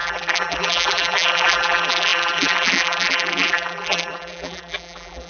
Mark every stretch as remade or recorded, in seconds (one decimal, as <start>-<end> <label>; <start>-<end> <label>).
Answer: 0.0-5.3 remade

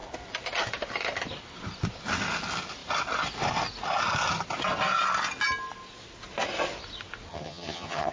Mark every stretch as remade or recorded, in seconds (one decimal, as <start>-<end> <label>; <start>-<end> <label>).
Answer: 0.0-7.3 recorded; 7.3-8.1 remade

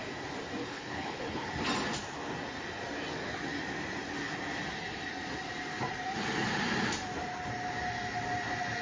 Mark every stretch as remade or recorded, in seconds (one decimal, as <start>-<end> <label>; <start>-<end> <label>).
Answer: 0.0-0.6 recorded; 0.6-1.5 remade; 1.5-8.8 recorded

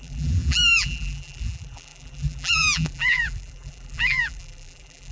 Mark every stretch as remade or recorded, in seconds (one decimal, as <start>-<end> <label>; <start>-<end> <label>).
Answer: 0.0-5.1 remade